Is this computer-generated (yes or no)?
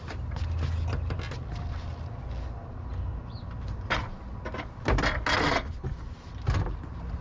no